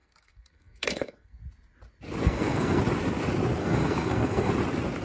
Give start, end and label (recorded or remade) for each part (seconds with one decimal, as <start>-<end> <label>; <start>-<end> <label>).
0.0-1.4 remade; 1.4-2.2 recorded; 2.2-2.8 remade; 2.8-3.6 recorded; 3.6-4.5 remade; 4.5-5.0 recorded